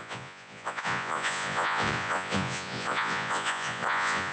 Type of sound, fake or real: fake